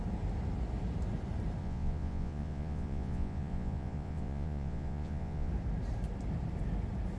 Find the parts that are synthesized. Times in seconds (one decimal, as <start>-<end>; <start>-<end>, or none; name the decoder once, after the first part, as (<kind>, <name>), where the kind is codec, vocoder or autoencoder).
1.6-5.5 (vocoder, Vocos)